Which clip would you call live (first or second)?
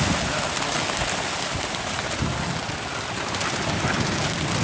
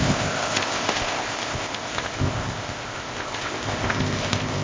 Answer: first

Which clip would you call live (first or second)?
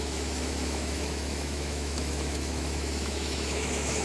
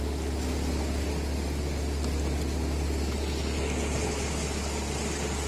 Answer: second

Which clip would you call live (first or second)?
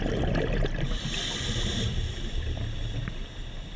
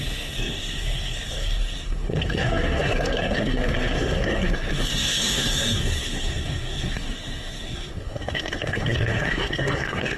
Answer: first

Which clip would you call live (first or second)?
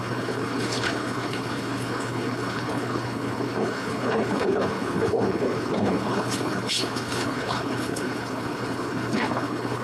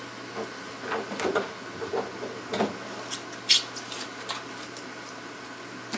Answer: second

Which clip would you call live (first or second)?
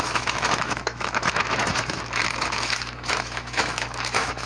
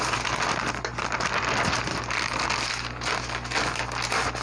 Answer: second